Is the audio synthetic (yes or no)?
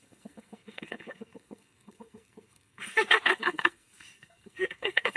yes